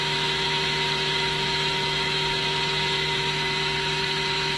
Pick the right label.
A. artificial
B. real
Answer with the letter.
A